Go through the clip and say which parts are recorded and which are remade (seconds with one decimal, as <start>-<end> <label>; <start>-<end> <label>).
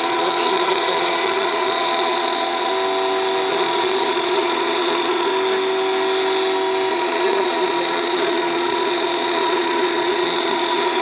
0.0-2.7 remade; 2.7-3.5 recorded; 3.5-5.3 remade; 5.3-6.9 recorded; 6.9-11.0 remade